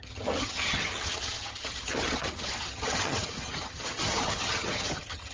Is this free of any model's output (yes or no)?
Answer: no